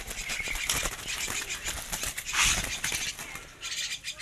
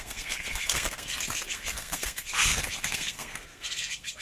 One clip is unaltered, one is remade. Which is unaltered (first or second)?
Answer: first